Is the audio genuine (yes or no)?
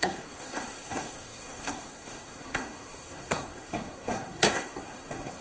no